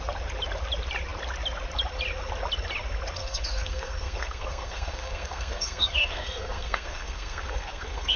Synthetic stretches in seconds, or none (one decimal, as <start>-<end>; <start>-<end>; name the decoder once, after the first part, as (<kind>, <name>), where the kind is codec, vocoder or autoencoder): 3.2-8.2 (codec, SNAC)